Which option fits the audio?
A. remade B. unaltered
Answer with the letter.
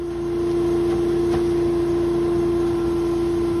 B